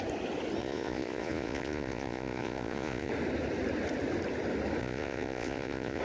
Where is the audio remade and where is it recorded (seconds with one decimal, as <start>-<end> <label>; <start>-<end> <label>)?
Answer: 0.0-0.6 recorded; 0.6-3.1 remade; 3.1-4.8 recorded; 4.8-6.0 remade